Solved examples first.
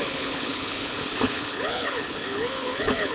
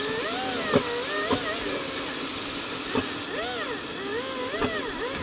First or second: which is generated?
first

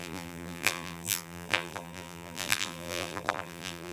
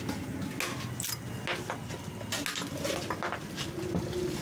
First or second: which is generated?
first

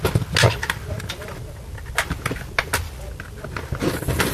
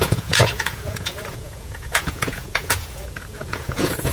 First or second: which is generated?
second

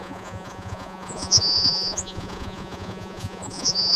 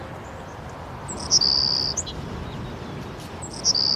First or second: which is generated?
first